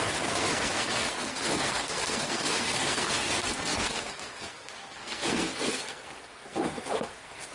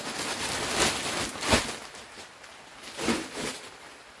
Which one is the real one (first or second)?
second